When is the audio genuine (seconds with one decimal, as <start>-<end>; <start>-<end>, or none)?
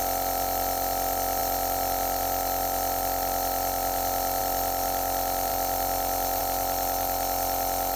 0.0-8.0